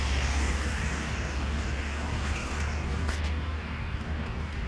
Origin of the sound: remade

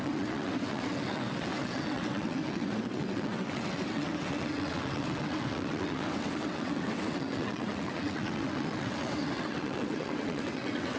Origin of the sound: remade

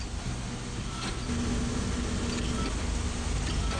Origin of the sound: recorded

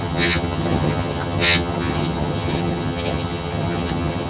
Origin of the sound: remade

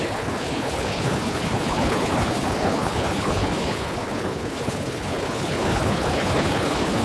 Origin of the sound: remade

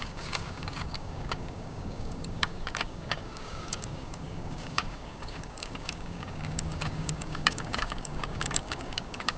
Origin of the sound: remade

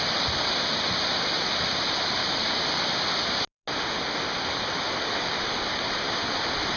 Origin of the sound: recorded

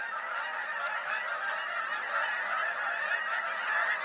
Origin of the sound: recorded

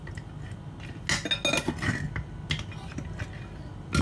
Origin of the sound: recorded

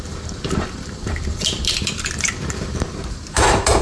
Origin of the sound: remade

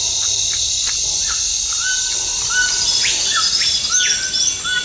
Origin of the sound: recorded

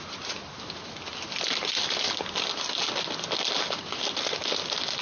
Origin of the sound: recorded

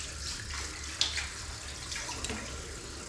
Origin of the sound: recorded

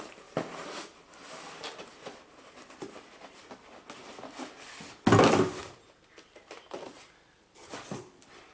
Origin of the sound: recorded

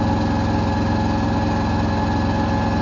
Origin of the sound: recorded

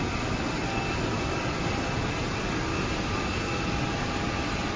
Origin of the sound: recorded